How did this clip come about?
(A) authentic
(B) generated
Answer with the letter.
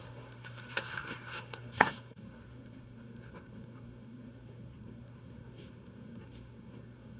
B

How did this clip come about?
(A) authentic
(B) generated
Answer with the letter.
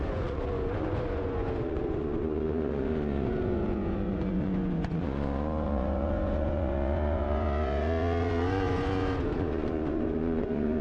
B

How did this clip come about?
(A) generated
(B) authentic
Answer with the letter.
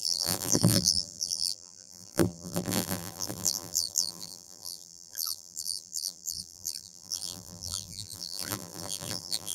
A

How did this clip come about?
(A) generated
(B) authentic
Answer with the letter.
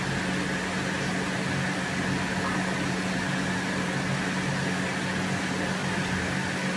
B